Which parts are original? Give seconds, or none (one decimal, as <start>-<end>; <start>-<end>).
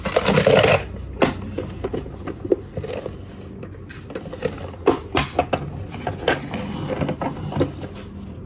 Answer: 0.0-8.5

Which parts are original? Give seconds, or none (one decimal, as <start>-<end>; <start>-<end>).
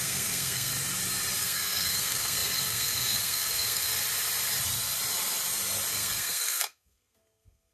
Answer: 0.7-1.4; 4.0-5.9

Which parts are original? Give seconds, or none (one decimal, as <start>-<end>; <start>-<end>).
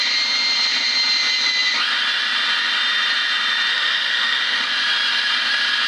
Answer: 0.0-3.7; 4.6-5.9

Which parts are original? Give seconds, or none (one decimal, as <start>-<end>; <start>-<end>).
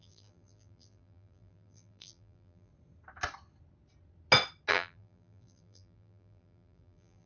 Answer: 2.7-4.7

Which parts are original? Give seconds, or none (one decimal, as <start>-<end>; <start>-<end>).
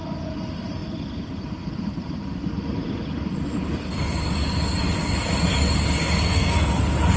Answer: 0.0-6.2; 6.8-7.2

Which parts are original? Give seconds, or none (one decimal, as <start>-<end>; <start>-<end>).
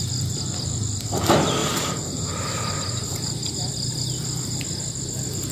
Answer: 0.0-1.6; 3.5-5.5